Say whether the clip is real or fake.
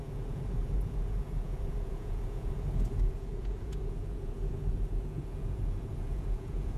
fake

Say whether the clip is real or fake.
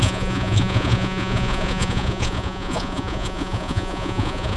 fake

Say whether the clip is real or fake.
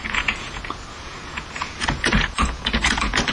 fake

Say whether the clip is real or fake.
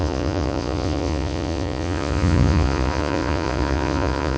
fake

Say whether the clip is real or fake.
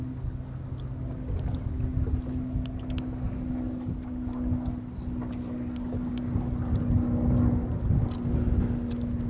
real